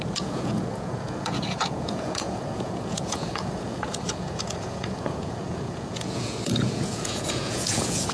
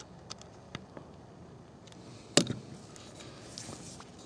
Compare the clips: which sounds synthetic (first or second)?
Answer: first